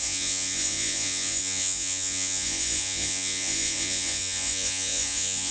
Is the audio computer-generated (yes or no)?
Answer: yes